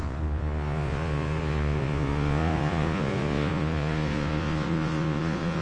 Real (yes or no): no